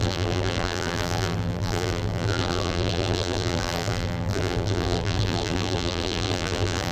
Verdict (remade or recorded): remade